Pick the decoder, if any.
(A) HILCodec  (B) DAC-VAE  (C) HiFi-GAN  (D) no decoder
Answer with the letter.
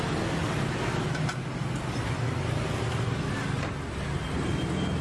D